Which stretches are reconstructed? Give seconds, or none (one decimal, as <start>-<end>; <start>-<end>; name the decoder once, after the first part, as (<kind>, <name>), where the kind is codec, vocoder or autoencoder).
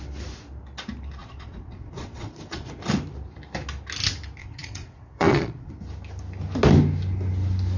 1.2-2.7 (vocoder, Vocos); 4.4-5.7